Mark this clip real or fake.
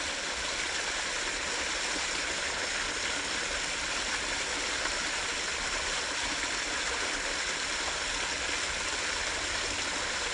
real